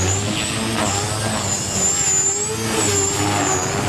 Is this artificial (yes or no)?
no